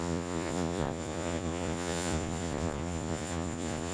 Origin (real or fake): fake